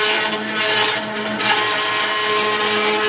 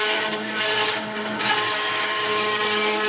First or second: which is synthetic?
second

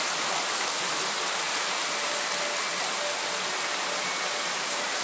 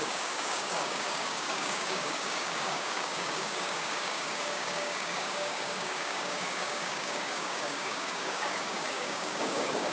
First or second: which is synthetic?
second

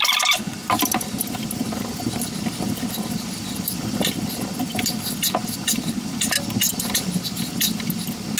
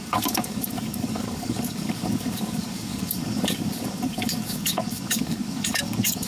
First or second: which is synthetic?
second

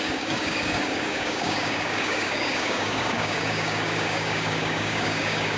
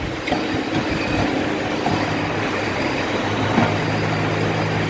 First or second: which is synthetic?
first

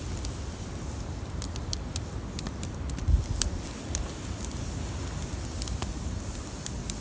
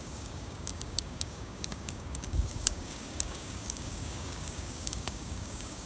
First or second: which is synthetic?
second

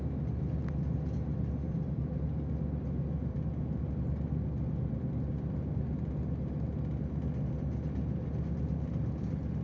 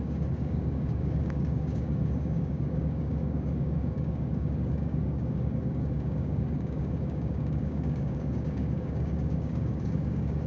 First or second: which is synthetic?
second